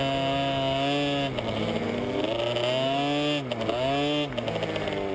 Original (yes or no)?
yes